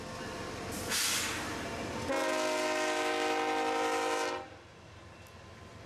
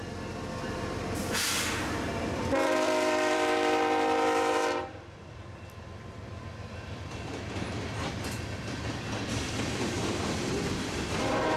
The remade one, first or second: second